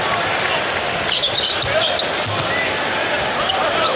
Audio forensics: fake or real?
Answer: real